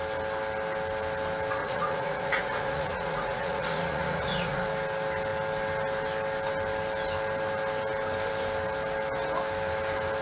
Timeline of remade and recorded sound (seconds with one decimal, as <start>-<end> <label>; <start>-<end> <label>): 0.0-1.6 recorded; 1.6-4.6 remade; 4.6-10.2 recorded